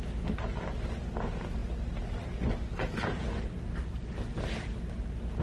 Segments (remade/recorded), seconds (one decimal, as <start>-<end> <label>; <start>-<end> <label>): 0.0-5.4 recorded